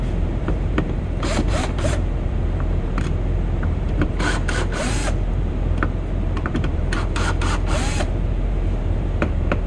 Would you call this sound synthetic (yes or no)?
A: yes